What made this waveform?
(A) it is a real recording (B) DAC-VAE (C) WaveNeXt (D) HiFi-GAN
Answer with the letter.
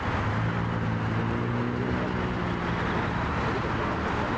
A